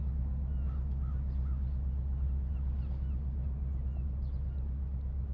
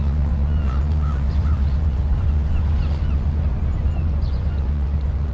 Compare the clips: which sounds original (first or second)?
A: first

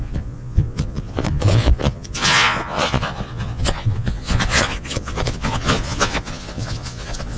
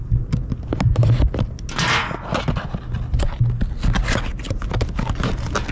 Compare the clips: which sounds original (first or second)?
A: second